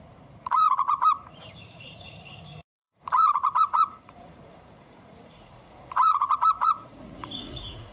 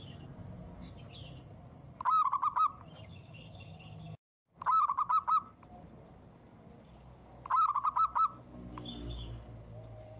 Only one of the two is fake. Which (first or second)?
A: first